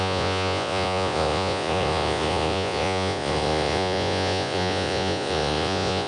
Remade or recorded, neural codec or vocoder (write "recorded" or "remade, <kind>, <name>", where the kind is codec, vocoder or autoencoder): remade, vocoder, Vocos